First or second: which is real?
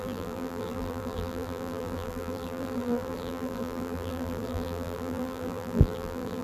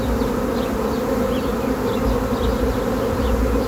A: second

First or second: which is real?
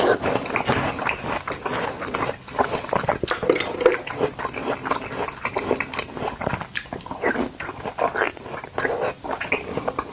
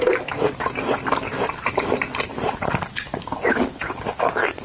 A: first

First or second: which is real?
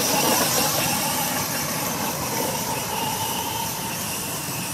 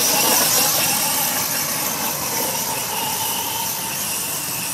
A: second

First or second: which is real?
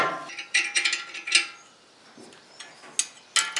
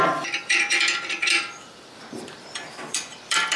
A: first